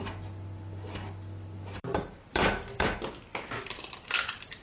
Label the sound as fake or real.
fake